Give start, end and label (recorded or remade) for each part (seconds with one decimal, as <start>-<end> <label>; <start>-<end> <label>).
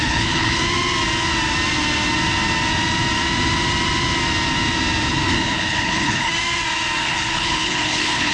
0.0-0.6 remade; 0.6-5.1 recorded; 5.1-6.3 remade; 6.3-7.0 recorded; 7.0-8.3 remade